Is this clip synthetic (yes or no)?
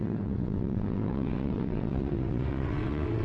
yes